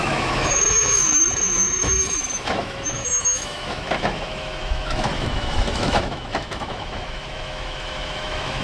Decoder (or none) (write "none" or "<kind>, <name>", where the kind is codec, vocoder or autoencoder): autoencoder, DAC-VAE